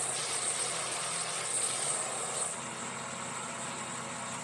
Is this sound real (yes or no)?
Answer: yes